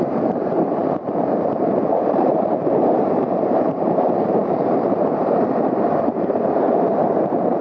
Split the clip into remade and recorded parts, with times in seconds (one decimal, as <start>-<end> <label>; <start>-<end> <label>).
0.0-7.6 remade